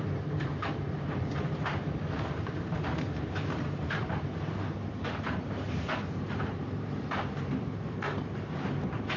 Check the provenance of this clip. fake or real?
fake